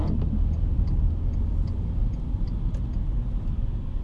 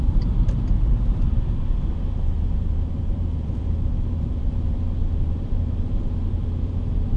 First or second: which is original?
first